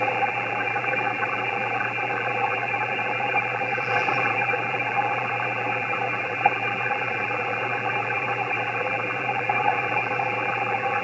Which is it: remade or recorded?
remade